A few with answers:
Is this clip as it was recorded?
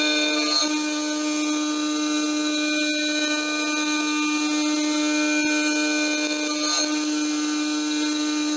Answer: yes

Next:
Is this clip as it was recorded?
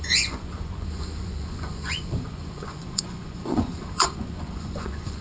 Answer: no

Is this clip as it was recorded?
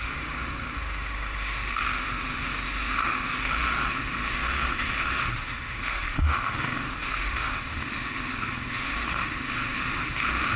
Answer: no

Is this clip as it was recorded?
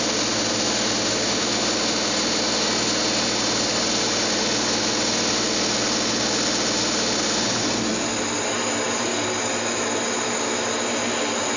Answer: yes